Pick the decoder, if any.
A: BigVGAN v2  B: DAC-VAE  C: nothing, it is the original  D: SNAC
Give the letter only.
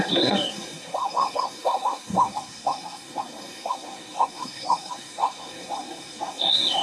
D